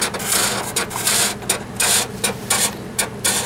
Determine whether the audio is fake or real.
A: real